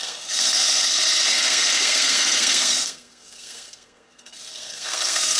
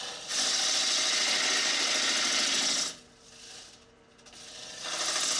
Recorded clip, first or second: second